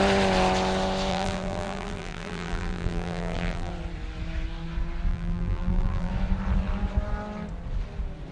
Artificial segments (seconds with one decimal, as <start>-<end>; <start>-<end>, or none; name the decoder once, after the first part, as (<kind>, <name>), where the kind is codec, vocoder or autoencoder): 1.1-3.7 (vocoder, BigVGAN v2); 5.1-6.1